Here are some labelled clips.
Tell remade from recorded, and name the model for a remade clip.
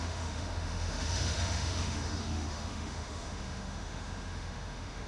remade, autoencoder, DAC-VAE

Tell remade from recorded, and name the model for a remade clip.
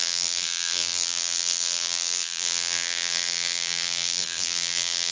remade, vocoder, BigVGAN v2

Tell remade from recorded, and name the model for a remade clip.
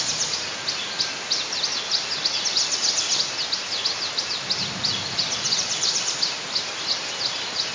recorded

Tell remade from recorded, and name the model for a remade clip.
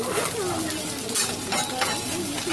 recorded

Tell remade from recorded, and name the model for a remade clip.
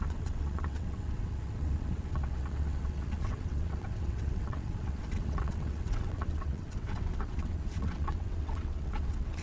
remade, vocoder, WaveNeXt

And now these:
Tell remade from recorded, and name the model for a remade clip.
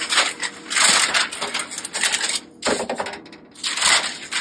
recorded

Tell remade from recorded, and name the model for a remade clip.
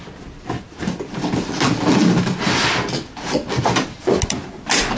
recorded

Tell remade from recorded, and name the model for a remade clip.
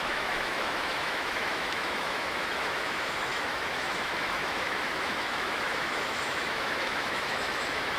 remade, autoencoder, DAC-VAE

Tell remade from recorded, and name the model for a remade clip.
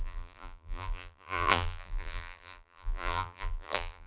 remade, vocoder, BigVGAN v2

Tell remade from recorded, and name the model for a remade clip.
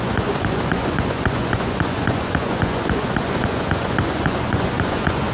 remade, vocoder, Vocos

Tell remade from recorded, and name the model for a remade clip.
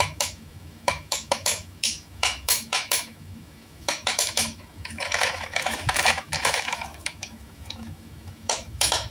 remade, autoencoder, DAC-VAE